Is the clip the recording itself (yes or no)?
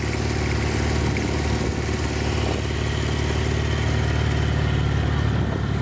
yes